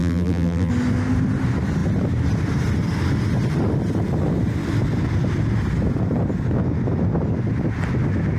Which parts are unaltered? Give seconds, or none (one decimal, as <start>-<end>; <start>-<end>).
0.7-8.4